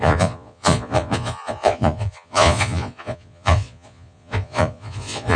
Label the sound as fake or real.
fake